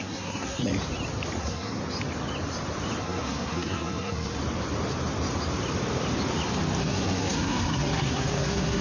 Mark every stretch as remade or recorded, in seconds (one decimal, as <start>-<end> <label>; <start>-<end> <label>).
0.0-0.6 remade; 0.6-1.4 recorded; 1.4-1.8 remade; 1.8-3.0 recorded; 3.0-4.4 remade; 4.4-6.8 recorded; 6.8-8.8 remade